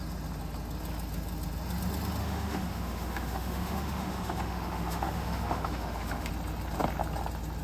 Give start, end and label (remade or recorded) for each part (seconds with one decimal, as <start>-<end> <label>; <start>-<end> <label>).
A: 0.0-2.2 recorded; 2.2-6.3 remade; 6.3-7.6 recorded